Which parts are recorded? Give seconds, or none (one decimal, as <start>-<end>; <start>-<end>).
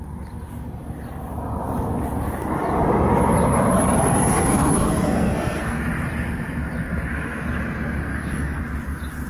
0.0-4.3; 5.8-8.1; 8.6-9.3